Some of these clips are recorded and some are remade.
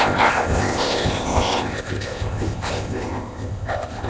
remade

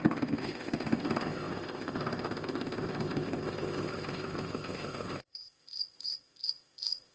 remade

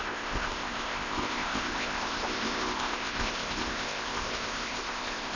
remade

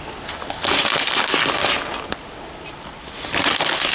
recorded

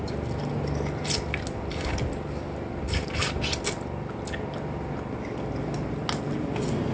recorded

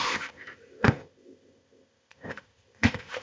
remade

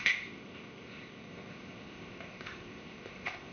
remade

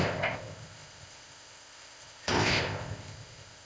remade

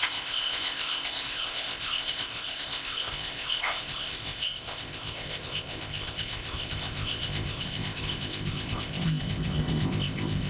remade